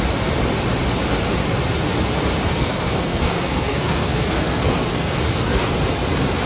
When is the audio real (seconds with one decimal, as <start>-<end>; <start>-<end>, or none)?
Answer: 0.0-2.5; 5.7-6.5